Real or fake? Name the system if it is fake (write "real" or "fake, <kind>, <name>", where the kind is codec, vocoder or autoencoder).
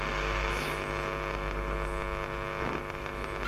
real